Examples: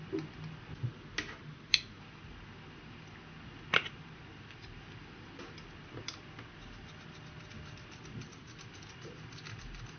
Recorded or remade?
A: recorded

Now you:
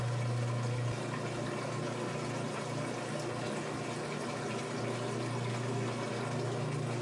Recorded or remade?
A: recorded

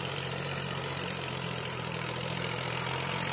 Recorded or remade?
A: remade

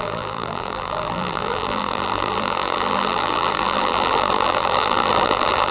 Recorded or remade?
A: remade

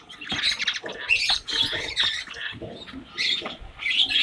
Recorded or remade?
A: remade